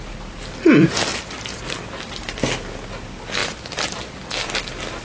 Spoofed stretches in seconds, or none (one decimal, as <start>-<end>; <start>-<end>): none